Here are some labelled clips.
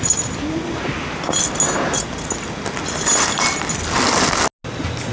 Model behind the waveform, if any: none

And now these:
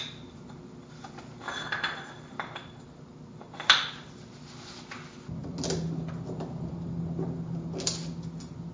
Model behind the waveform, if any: none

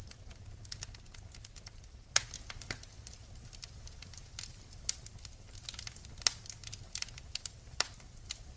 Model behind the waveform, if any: none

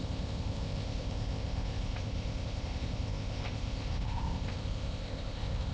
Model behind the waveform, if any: codec, ZipCodec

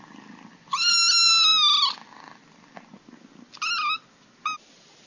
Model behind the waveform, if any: none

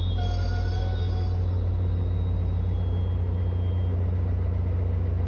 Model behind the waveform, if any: none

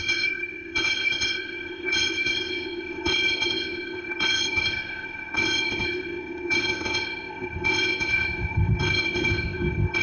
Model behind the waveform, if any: codec, ZipCodec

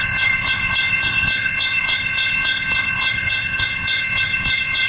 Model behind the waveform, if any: codec, ZipCodec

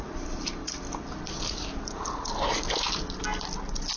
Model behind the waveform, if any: none